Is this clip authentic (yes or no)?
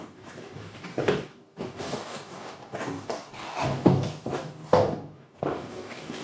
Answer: no